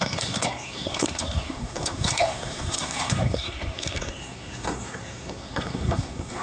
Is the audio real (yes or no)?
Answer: no